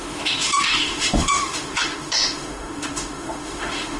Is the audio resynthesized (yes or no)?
yes